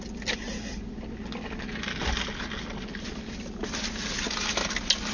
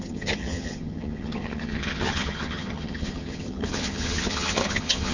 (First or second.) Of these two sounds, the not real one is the second